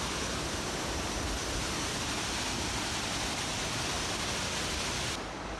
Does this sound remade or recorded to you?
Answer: recorded